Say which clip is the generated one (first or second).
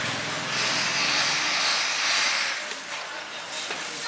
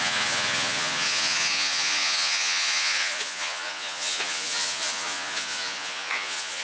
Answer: second